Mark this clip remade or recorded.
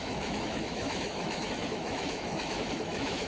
remade